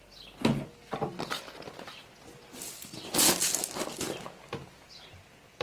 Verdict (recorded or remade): recorded